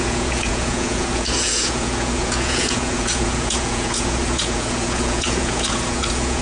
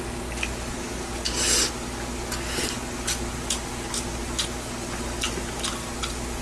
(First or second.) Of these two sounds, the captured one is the second